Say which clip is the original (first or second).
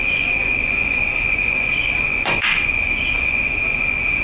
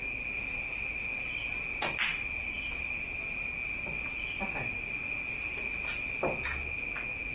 second